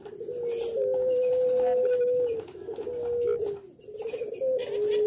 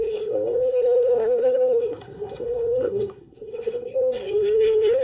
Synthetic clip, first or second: second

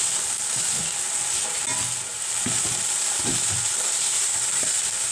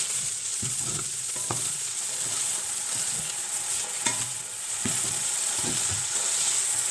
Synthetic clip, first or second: second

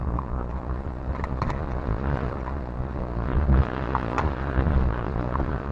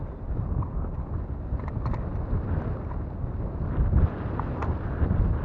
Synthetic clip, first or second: first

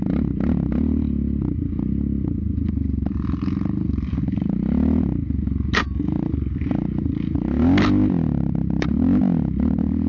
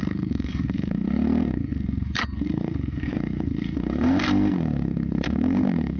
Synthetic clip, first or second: second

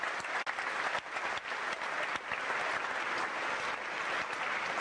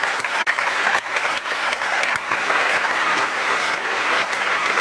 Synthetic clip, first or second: second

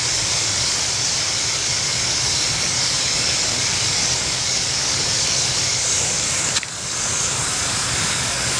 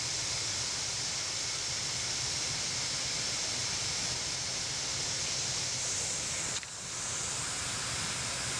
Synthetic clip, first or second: first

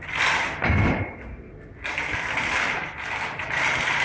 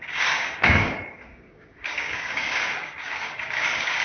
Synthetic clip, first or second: second